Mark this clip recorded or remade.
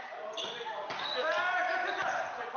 recorded